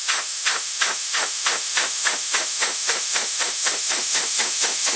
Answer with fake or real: fake